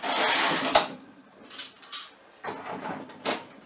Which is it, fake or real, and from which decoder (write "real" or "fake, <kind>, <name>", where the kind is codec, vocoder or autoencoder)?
real